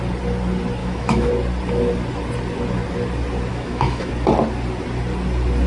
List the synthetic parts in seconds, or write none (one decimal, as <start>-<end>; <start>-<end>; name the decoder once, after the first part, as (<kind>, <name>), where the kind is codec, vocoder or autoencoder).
0.8-1.3 (autoencoder, DAC-VAE); 3.5-4.1